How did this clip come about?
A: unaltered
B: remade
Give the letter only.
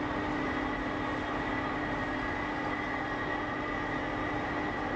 A